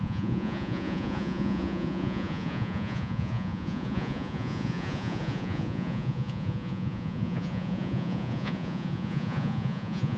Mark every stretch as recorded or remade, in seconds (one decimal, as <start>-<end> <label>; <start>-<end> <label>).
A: 0.0-10.2 remade